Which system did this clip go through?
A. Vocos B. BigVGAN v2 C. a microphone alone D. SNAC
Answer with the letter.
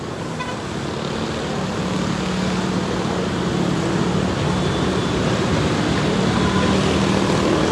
C